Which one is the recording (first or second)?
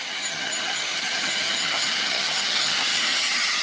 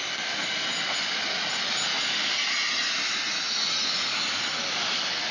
second